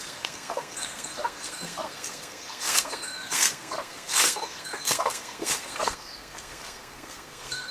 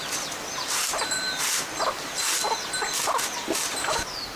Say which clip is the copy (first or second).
first